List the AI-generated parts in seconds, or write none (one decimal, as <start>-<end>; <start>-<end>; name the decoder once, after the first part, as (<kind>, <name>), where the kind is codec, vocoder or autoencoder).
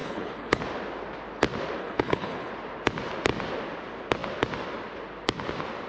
0.0-0.6 (codec, HILCodec); 1.8-2.5